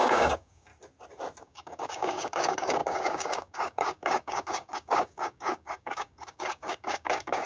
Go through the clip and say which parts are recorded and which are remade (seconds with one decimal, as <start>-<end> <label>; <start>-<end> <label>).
0.0-0.7 remade; 0.7-1.4 recorded; 1.4-7.5 remade